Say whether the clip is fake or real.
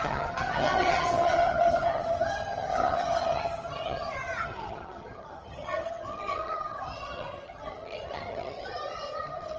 fake